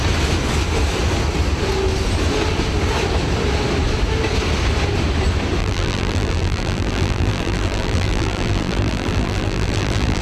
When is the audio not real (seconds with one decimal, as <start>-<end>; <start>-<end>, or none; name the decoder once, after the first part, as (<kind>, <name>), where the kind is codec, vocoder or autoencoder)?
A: 5.6-10.2 (vocoder, BigVGAN v2)